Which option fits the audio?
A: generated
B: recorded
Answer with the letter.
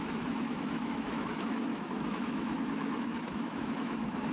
A